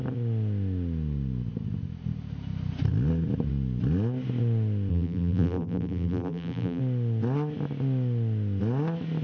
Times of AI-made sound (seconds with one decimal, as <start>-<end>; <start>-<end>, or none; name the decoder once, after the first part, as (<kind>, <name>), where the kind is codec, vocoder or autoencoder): 4.9-6.8 (vocoder, BigVGAN v2)